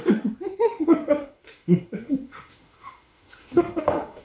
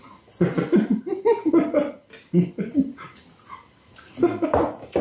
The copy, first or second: first